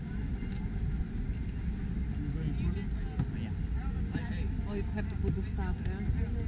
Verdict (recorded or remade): recorded